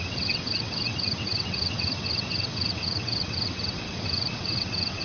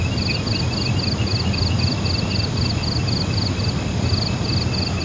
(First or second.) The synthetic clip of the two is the first